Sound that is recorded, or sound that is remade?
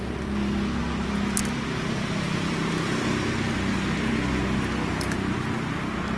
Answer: recorded